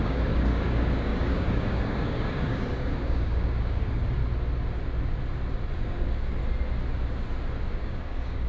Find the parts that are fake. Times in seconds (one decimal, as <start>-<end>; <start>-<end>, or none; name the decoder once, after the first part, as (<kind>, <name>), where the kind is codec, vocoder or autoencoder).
0.0-4.2 (codec, DAC); 5.7-6.4; 7.7-8.5